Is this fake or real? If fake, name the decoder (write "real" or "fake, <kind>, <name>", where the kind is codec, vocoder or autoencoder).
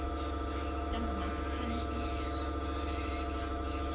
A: real